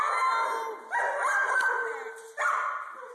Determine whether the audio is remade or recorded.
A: recorded